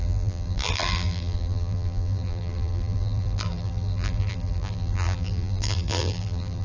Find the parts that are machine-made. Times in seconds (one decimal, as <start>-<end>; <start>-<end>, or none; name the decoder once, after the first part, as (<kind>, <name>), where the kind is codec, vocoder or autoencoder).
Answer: 0.0-6.6 (vocoder, BigVGAN v2)